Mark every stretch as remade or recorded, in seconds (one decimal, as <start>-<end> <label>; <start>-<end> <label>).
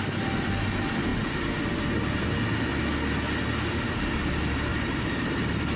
0.0-1.1 recorded; 1.1-1.6 remade; 1.6-4.7 recorded; 4.7-5.8 remade